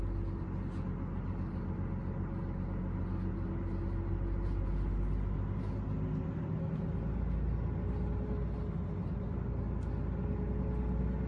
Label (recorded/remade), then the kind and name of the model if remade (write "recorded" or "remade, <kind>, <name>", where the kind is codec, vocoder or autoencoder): recorded